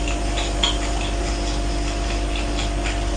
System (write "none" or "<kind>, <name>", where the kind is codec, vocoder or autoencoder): none